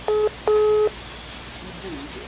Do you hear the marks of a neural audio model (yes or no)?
no